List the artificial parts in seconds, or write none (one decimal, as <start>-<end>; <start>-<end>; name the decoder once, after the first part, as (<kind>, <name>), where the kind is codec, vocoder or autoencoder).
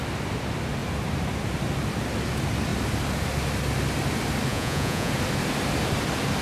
4.5-5.1 (vocoder, Vocos)